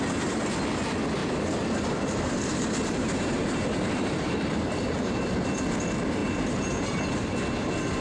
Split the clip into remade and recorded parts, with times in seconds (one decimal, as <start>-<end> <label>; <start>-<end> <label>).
0.0-1.2 recorded; 1.2-5.5 remade; 5.5-6.2 recorded; 6.2-7.0 remade; 7.0-8.0 recorded